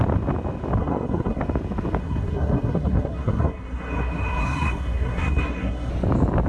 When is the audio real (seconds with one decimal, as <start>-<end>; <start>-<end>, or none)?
0.0-0.8; 1.4-2.0; 5.9-6.5